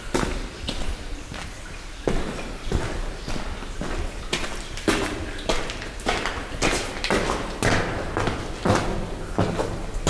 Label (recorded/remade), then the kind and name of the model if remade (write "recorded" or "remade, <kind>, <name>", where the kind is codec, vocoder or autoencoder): recorded